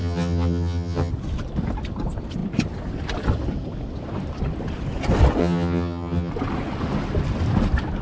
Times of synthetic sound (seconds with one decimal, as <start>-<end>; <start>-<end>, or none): 0.0-1.1; 5.4-6.3